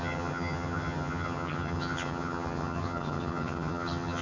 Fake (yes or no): yes